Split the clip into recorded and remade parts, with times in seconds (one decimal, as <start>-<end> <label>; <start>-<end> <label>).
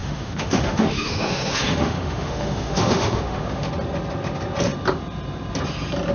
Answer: 0.0-3.7 remade; 3.7-6.1 recorded